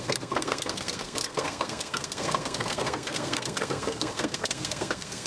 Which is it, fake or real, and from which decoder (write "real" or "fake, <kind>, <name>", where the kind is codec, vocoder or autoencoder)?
fake, codec, SNAC